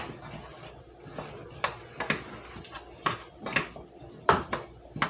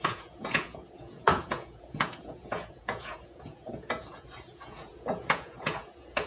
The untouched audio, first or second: first